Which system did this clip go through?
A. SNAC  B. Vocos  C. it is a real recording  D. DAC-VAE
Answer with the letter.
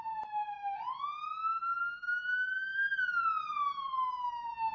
C